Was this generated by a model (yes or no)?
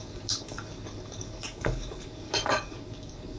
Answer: yes